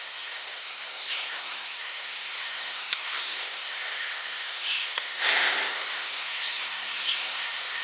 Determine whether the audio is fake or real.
fake